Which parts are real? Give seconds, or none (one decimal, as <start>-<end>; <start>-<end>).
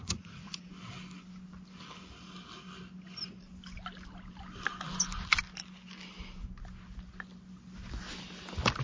0.7-8.8